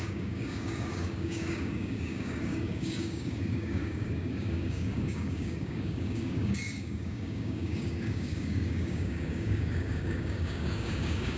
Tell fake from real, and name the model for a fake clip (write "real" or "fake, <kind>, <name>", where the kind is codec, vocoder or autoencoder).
fake, codec, DAC